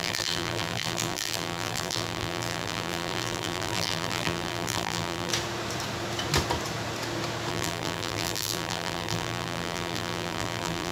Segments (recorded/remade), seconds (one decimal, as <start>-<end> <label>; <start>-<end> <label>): 0.0-5.3 remade; 5.3-7.5 recorded; 7.5-10.9 remade